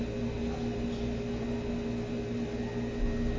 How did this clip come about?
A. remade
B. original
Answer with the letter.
B